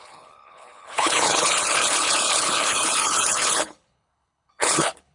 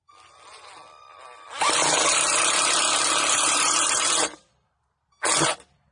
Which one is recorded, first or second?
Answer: second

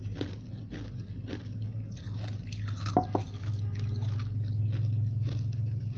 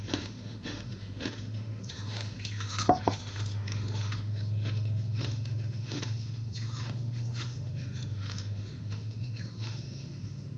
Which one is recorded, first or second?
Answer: first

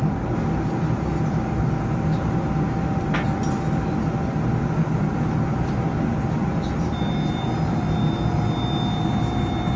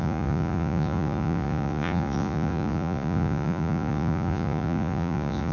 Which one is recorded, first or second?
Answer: first